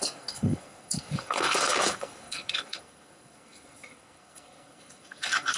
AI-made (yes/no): yes